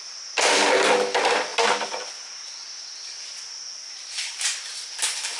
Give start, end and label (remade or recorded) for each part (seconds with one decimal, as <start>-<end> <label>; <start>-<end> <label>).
0.0-5.4 recorded